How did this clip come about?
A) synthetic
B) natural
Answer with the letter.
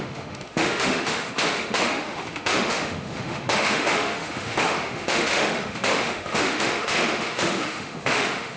A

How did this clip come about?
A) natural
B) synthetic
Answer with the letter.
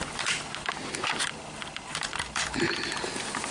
A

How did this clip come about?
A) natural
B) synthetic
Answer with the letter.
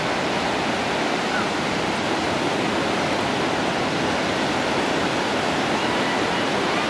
A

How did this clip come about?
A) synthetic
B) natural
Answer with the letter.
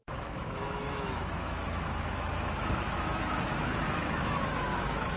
A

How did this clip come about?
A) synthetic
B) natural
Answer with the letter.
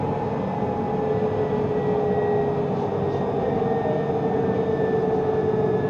B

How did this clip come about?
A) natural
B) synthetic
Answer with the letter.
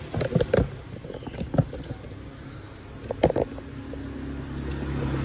A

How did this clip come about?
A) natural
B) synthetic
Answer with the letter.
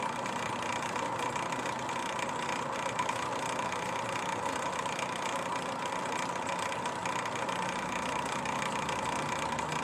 A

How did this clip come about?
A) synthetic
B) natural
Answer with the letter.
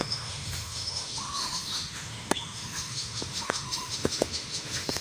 A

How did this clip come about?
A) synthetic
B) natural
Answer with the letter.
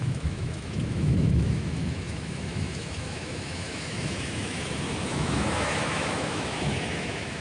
A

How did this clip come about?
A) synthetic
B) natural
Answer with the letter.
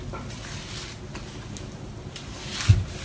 B